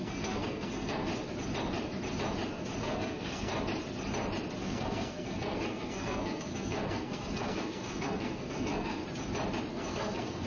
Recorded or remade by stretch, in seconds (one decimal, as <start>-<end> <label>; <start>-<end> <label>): 0.0-1.1 remade; 1.1-2.8 recorded; 2.8-3.5 remade; 3.5-4.6 recorded; 4.6-9.0 remade; 9.0-9.7 recorded; 9.7-10.5 remade